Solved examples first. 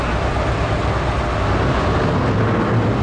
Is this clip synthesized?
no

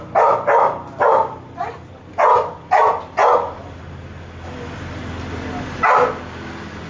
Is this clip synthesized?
no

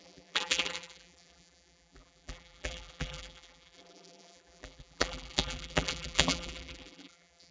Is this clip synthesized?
yes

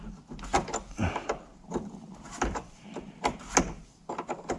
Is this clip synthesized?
no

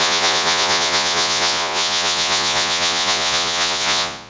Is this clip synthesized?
yes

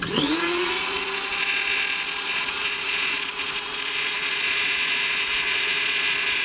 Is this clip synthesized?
yes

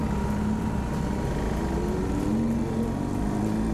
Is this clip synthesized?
no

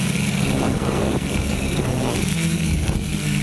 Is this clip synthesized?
yes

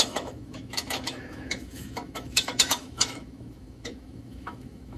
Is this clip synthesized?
yes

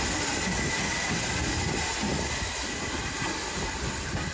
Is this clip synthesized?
no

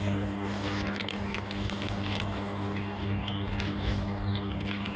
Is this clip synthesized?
yes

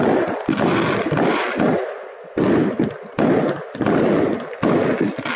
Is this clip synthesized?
no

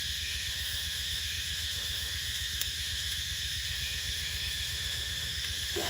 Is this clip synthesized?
yes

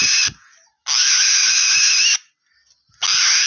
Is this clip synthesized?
no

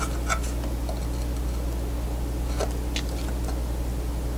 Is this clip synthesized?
no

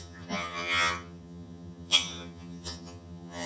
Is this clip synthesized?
yes